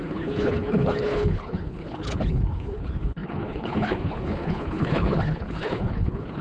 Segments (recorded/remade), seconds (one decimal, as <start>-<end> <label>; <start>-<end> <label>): 0.0-6.4 remade